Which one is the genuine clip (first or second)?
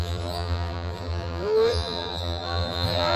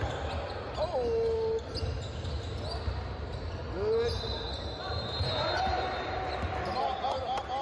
second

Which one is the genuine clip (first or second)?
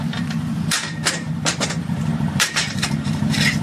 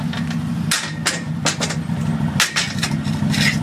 second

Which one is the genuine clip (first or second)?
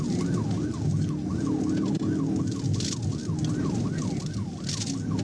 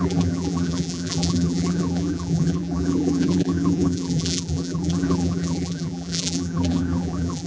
first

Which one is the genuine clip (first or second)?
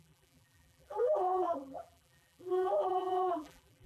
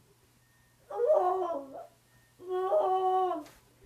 second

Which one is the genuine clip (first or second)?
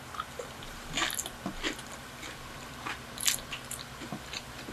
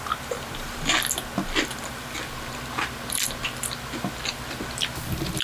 second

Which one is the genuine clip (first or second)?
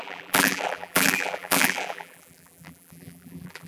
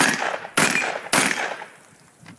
second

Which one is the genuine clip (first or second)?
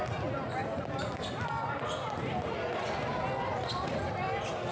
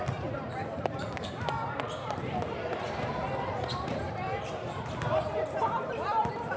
first